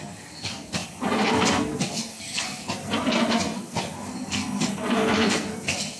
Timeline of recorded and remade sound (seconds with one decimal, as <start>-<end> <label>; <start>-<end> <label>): 0.0-6.0 remade